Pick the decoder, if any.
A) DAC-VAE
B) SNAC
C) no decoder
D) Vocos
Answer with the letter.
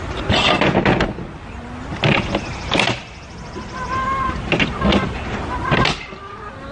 C